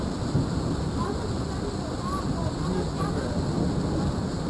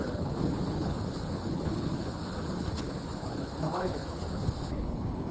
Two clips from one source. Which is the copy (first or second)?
second